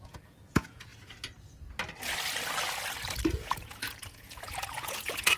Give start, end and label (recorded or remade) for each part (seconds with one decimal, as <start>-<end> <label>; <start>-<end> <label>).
0.0-0.9 remade; 0.9-3.4 recorded; 3.4-5.4 remade